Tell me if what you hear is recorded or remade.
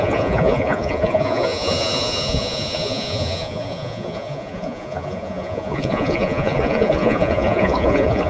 remade